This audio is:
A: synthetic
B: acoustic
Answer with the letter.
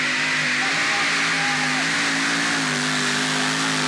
B